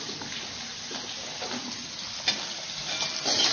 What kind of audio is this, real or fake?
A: real